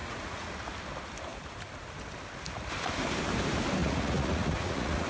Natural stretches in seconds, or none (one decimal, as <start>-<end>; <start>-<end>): 0.5-3.8